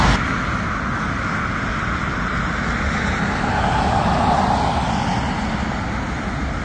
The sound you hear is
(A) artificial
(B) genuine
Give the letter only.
B